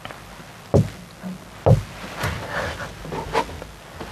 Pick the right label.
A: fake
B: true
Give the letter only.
B